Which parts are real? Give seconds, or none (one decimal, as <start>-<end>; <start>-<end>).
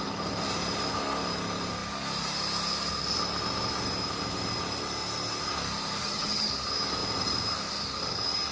0.0-6.0; 6.5-8.5